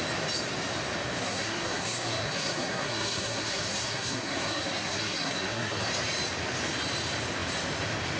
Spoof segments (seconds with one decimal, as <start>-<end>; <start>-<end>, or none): 1.2-5.8